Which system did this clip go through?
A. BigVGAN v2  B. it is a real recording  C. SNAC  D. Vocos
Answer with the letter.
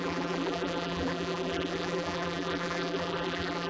A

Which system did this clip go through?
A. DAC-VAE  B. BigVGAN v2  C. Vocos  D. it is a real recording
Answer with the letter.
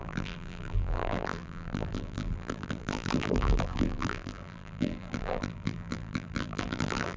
B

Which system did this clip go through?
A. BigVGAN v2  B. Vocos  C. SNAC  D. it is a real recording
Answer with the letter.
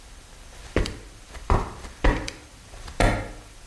A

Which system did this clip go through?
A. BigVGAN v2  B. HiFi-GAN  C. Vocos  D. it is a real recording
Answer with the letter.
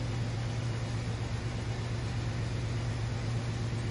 D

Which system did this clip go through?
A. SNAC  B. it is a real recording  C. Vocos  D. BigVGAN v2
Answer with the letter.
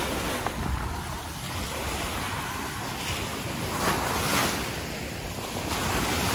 B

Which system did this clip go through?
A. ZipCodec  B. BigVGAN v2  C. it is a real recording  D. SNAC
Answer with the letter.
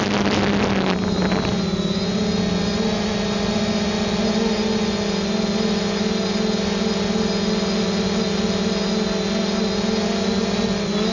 C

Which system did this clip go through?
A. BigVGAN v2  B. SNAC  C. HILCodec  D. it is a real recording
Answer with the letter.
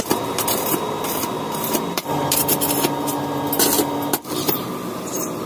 D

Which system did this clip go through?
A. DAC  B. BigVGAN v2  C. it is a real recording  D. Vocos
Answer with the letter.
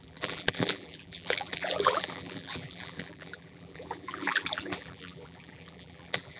B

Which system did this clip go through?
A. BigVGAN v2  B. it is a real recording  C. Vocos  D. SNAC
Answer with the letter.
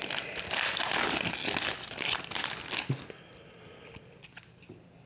B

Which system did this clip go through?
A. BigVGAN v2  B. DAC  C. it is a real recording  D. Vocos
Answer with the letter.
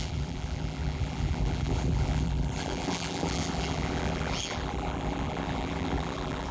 A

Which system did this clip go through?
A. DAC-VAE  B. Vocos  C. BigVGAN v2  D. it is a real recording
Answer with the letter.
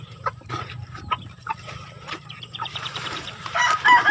C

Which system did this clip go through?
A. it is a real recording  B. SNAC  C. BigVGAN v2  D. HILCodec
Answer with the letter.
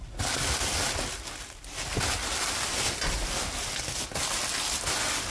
A